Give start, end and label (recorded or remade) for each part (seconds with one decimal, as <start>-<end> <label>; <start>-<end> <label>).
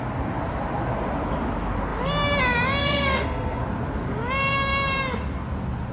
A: 0.0-2.8 recorded; 2.8-3.6 remade; 3.6-5.9 recorded